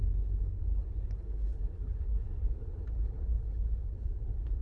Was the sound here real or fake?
fake